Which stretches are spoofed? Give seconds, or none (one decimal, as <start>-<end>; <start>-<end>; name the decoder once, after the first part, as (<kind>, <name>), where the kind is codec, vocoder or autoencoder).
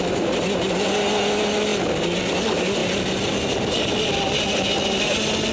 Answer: none